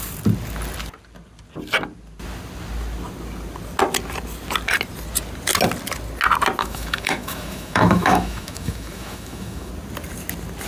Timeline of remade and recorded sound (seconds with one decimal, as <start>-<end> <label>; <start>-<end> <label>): 0.0-6.6 recorded; 6.6-9.7 remade; 9.7-10.7 recorded